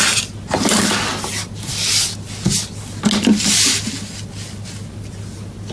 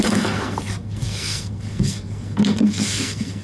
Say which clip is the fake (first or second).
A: second